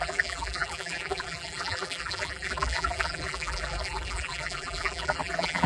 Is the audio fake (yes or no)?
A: yes